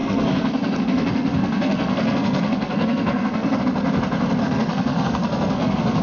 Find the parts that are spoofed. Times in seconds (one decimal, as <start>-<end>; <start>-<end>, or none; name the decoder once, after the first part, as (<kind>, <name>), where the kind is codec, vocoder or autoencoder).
0.0-3.6 (codec, SNAC); 4.4-6.0